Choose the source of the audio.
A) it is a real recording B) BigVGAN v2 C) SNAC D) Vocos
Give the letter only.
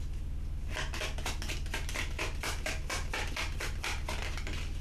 A